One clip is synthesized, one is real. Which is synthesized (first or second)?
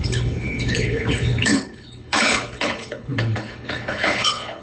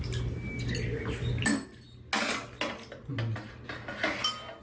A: first